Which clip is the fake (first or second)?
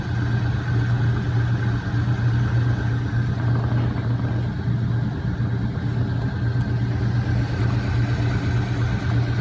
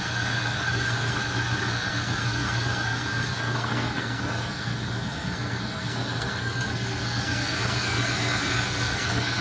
second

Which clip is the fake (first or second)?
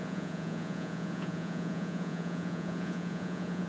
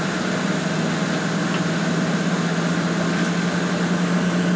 first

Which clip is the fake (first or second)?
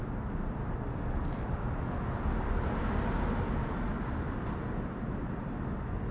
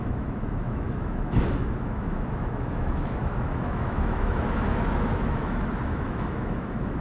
second